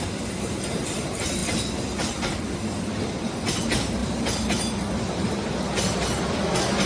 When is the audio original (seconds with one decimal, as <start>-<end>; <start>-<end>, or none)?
0.0-6.9